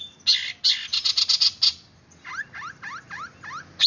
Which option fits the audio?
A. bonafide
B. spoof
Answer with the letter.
A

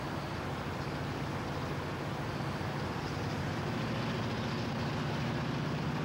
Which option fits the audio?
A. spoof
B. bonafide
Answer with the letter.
B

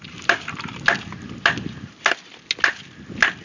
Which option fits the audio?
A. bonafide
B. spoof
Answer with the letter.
A